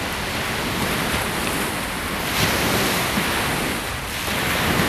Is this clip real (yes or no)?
yes